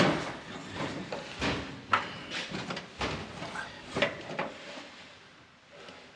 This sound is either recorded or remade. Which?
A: recorded